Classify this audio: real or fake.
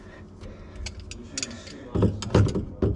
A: real